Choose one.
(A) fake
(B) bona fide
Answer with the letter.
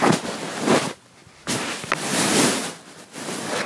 B